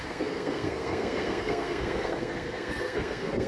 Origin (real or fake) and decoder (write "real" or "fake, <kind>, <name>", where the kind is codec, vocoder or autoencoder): fake, codec, SNAC